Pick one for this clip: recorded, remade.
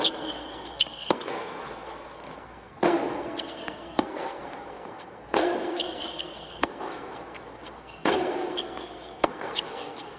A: remade